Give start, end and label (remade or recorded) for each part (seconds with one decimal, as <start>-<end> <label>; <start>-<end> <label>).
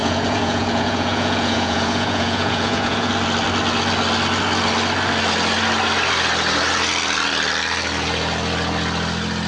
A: 0.0-3.1 remade; 3.1-9.5 recorded